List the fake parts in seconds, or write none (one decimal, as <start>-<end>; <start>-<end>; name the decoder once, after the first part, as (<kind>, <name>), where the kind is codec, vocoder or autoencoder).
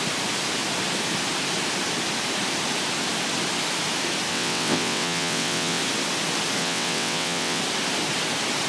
4.3-5.8 (vocoder, WaveNeXt); 6.6-7.6